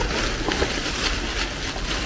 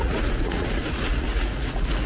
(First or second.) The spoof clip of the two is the second